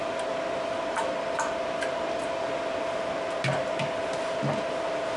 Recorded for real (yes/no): yes